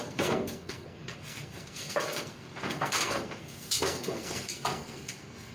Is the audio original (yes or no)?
no